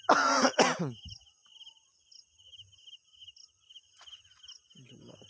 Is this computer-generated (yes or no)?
no